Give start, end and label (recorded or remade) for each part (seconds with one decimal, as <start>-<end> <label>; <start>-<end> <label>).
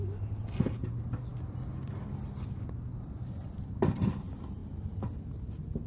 0.0-5.9 recorded